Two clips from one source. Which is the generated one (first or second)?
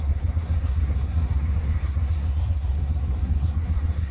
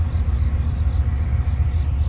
first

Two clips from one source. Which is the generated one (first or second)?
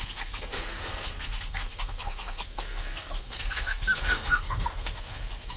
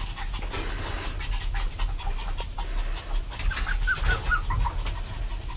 first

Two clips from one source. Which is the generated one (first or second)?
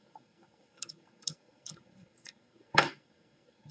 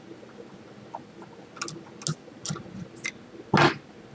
first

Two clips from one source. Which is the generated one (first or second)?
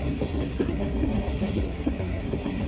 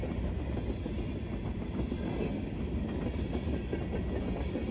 first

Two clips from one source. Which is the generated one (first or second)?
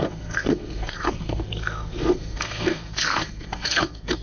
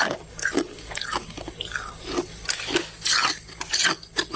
first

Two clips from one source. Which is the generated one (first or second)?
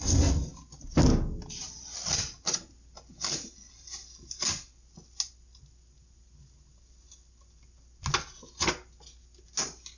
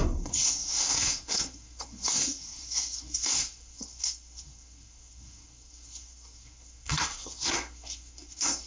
second